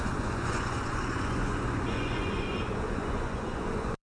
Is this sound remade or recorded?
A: remade